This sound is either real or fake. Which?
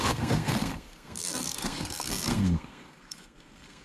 fake